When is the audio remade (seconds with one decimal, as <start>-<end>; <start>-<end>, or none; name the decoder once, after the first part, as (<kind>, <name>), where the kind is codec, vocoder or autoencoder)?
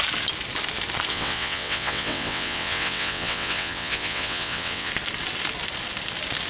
1.1-4.9 (vocoder, WaveNeXt)